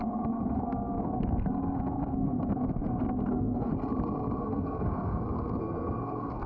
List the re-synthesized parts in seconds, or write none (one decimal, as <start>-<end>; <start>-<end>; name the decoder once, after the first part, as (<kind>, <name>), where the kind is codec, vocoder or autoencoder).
0.0-3.7 (codec, SNAC); 4.4-6.5